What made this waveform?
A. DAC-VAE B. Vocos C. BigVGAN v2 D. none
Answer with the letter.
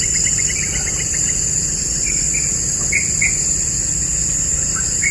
D